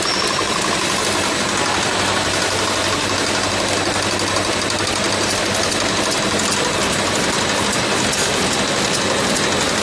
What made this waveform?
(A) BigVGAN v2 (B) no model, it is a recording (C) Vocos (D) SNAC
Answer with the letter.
B